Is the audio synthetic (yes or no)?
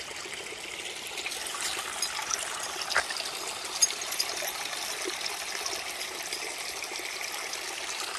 no